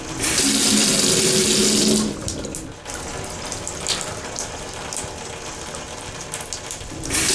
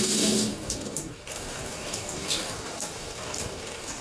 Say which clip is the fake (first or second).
second